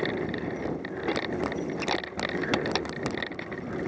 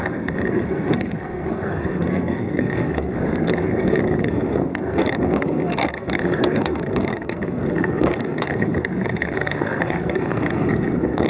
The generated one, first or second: second